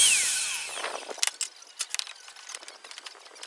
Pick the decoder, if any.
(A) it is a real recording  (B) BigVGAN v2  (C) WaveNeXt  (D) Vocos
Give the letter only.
A